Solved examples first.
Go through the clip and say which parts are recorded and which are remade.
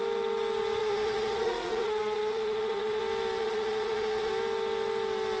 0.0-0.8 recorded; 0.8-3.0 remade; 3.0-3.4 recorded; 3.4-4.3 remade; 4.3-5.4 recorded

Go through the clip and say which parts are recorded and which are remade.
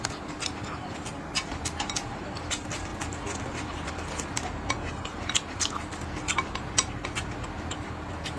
0.0-8.4 recorded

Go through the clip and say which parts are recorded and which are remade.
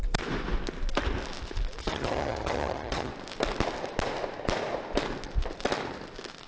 0.0-1.8 recorded; 1.8-3.1 remade; 3.1-6.5 recorded